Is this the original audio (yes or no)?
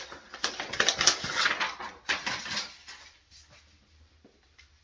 yes